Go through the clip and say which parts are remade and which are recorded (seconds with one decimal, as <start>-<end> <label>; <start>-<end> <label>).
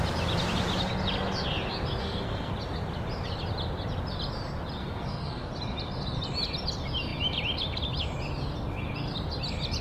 0.0-2.0 recorded; 2.0-2.5 remade; 2.5-4.8 recorded; 4.8-5.5 remade; 5.5-9.8 recorded